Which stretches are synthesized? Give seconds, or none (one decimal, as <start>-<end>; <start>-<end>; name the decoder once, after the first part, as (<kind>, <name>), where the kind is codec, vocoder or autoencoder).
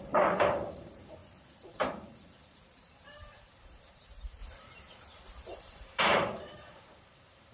0.0-7.5 (vocoder, BigVGAN v2)